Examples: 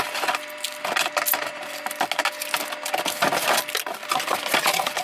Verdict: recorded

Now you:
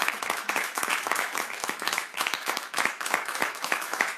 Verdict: remade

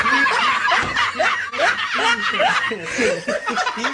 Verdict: recorded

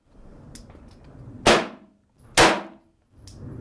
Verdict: recorded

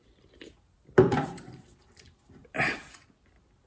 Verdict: recorded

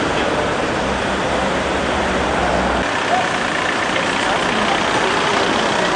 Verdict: recorded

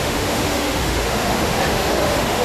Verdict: remade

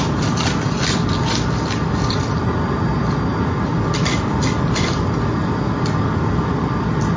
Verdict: recorded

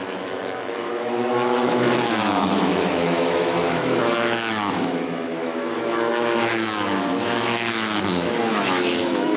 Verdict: remade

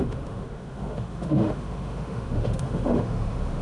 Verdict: remade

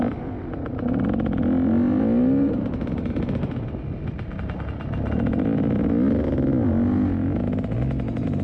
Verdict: recorded